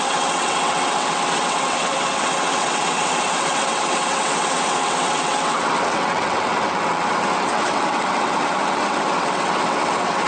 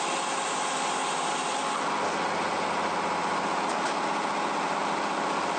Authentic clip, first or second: second